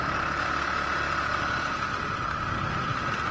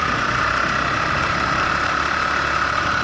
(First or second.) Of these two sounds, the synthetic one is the second